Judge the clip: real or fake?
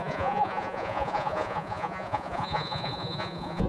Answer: fake